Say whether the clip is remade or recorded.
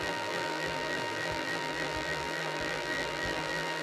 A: remade